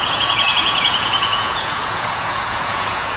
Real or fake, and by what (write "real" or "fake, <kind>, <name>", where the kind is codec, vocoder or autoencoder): fake, vocoder, Vocos